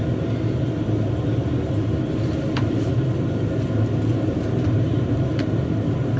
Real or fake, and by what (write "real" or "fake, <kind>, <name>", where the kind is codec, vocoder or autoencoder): real